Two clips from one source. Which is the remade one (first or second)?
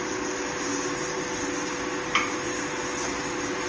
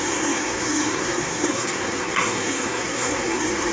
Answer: second